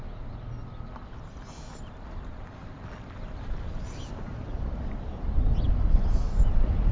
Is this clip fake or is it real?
real